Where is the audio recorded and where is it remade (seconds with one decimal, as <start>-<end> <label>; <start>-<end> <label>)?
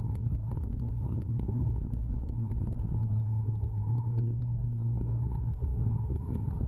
0.0-6.7 remade